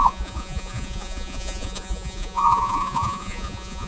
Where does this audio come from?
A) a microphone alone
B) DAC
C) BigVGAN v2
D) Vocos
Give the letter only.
D